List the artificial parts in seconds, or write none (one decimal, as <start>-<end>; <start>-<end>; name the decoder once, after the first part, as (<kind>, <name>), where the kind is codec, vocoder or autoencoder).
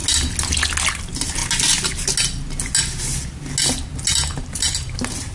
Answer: 0.9-1.4 (vocoder, BigVGAN v2); 4.1-5.3